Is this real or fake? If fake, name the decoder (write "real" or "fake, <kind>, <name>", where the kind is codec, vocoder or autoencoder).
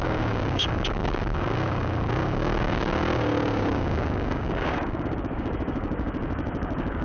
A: fake, codec, DAC